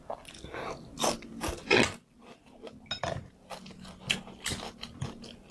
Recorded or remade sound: recorded